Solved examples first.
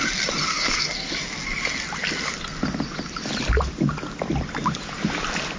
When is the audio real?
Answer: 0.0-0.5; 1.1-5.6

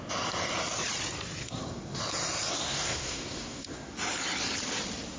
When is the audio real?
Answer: 0.0-1.4; 2.0-2.5; 3.9-5.2